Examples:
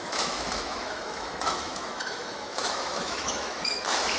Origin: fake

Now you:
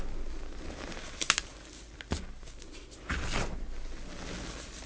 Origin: real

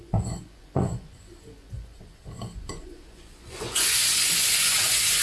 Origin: fake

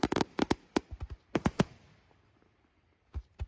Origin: fake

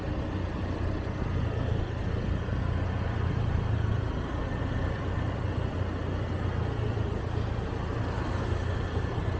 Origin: real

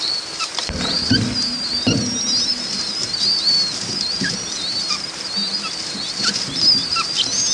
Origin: real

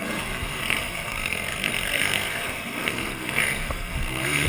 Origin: fake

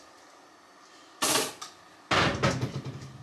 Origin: real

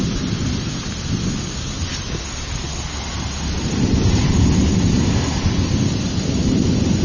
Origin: real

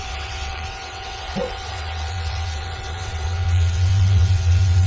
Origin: fake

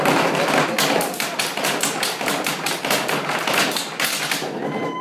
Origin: real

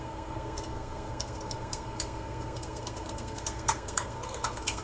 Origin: fake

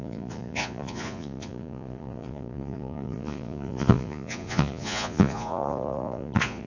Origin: fake